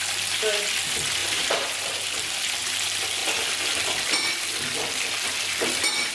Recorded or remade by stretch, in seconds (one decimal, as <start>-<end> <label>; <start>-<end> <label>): 0.0-1.2 recorded; 1.2-1.8 remade; 1.8-6.1 recorded